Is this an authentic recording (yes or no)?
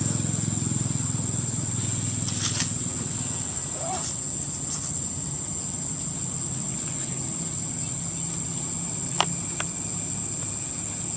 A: yes